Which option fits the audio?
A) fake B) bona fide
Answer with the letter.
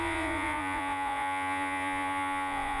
A